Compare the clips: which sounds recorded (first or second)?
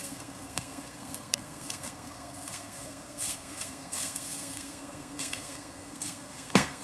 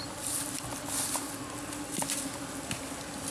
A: second